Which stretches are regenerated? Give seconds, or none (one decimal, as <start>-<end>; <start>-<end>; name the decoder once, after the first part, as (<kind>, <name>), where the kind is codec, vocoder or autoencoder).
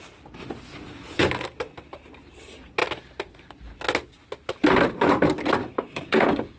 5.6-6.6 (codec, DAC)